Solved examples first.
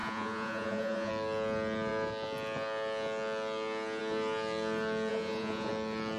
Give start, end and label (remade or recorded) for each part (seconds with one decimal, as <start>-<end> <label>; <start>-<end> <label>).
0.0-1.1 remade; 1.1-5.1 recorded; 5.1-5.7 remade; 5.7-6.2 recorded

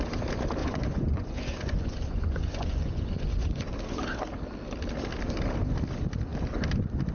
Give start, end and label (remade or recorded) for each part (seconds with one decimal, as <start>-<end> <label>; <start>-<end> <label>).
0.0-0.6 recorded; 0.6-3.7 remade; 3.7-7.1 recorded

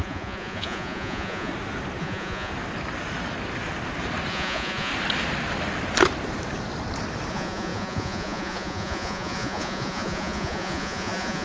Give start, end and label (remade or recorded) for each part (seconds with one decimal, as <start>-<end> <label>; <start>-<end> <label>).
0.0-1.5 remade; 1.5-2.0 recorded; 2.0-2.5 remade; 2.5-4.3 recorded; 4.3-4.9 remade; 4.9-7.3 recorded; 7.3-11.4 remade